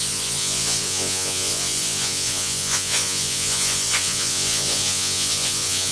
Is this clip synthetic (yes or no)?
yes